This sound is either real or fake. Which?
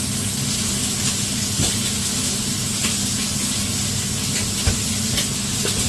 real